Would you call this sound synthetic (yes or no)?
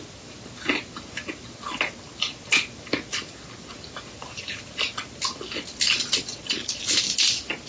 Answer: no